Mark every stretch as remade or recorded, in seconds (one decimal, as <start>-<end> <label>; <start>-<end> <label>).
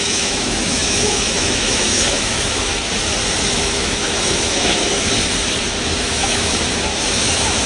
0.0-2.7 remade; 2.7-3.5 recorded; 3.5-5.1 remade; 5.1-6.0 recorded; 6.0-7.7 remade